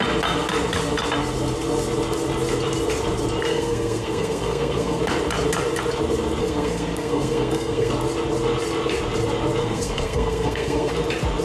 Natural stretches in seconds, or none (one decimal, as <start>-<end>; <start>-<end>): 0.0-3.5; 5.0-6.4; 7.9-9.6; 10.9-11.4